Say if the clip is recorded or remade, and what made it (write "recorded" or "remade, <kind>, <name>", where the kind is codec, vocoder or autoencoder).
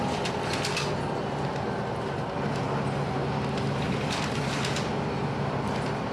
recorded